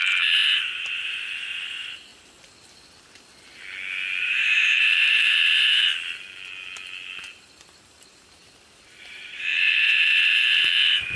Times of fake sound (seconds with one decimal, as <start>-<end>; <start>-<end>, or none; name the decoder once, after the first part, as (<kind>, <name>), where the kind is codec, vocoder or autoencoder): 0.0-2.1 (vocoder, BigVGAN v2); 4.2-5.9; 9.0-11.2